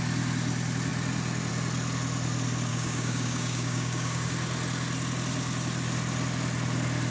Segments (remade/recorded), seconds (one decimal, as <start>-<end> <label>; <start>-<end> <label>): 0.0-2.7 recorded; 2.7-4.3 remade; 4.3-7.1 recorded